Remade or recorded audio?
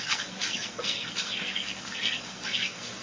remade